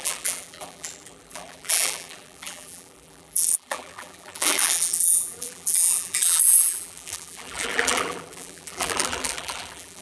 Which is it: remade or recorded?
remade